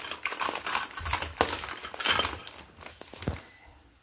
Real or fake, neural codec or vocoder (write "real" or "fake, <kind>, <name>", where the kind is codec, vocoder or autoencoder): real